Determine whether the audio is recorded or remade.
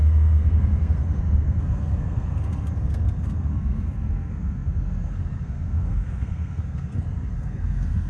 remade